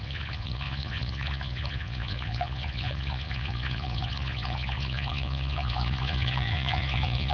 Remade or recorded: remade